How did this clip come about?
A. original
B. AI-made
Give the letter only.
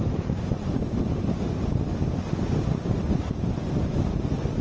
A